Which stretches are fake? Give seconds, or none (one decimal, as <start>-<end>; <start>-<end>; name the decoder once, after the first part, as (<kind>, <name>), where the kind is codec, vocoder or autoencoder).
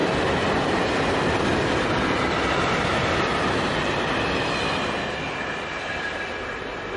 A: none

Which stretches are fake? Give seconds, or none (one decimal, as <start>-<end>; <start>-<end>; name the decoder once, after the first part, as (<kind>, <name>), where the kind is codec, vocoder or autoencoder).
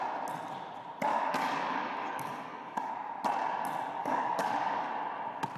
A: 1.1-2.9 (codec, DAC); 4.0-4.9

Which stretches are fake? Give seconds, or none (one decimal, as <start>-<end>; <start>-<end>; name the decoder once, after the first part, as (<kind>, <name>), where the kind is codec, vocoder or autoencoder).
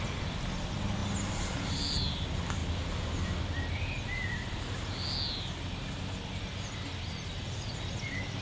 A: none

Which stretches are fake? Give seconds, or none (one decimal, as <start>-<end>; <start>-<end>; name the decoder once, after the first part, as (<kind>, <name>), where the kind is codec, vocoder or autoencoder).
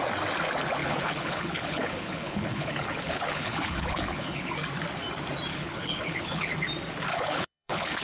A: 0.8-4.5 (codec, HILCodec); 5.5-6.5; 7.1-8.0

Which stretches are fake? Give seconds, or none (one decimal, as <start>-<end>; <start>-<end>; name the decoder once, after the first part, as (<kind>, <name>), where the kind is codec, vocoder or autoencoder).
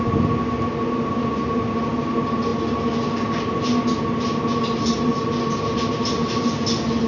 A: none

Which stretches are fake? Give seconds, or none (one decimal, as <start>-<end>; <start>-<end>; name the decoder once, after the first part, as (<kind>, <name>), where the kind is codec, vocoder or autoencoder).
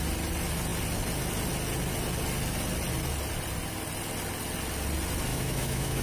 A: 5.3-6.0 (autoencoder, DAC-VAE)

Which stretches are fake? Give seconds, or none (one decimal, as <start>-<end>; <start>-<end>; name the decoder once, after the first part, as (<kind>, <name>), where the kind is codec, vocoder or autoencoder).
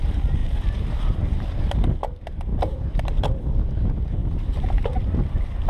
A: none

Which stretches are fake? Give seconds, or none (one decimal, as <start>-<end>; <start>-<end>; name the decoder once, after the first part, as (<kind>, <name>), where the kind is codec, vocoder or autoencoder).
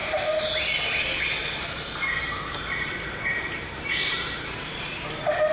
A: 0.0-0.6 (vocoder, BigVGAN v2); 1.4-4.7